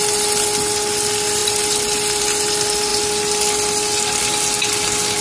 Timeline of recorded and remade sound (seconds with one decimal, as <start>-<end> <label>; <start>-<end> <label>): 0.0-5.2 recorded